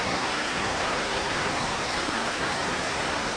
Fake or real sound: fake